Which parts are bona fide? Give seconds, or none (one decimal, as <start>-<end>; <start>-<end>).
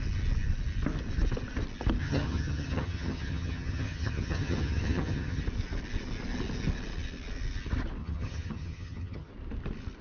0.0-2.0; 5.4-8.0; 9.3-10.0